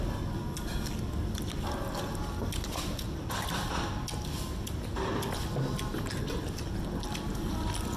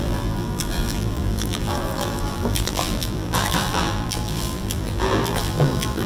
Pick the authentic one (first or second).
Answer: first